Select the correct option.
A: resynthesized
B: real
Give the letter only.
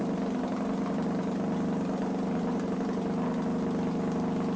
B